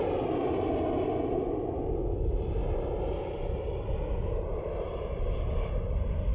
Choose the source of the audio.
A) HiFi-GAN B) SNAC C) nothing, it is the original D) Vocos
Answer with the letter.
C